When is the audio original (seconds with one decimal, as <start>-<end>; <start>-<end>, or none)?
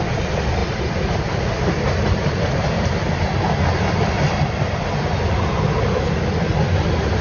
0.0-0.6; 3.0-7.2